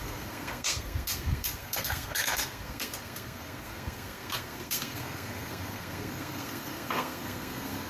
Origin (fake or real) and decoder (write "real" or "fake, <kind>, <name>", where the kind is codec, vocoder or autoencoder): fake, codec, SNAC